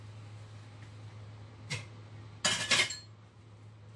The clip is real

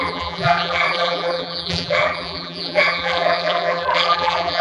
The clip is fake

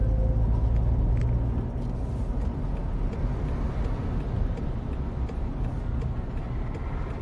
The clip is real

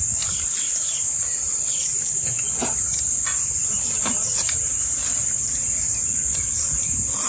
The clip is fake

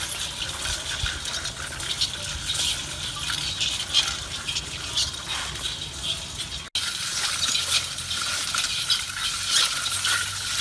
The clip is real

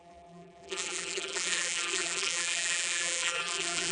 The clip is fake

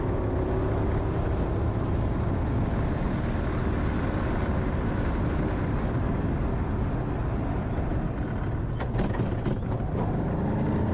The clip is real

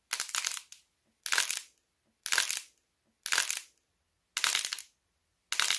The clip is real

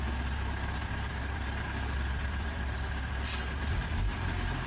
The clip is fake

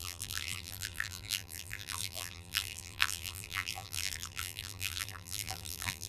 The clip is fake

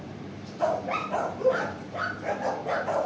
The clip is fake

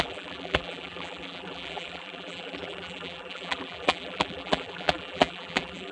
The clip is fake